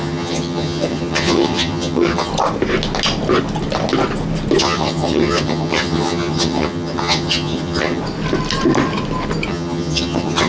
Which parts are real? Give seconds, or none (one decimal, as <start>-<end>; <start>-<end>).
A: 2.3-4.6; 8.0-9.5